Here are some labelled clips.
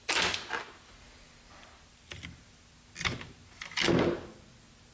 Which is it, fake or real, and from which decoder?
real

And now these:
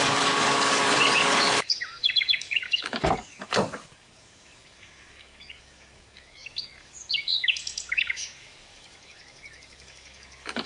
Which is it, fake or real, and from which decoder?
fake, codec, DAC